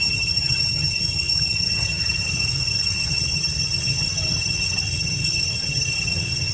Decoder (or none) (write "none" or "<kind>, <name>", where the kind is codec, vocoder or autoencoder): vocoder, HiFi-GAN